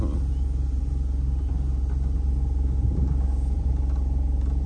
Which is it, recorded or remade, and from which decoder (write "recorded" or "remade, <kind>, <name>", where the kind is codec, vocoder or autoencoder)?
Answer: recorded